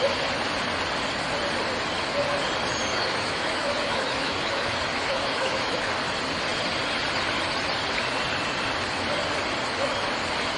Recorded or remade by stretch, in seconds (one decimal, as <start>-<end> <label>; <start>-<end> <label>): 0.0-2.9 recorded; 2.9-5.9 remade; 5.9-10.6 recorded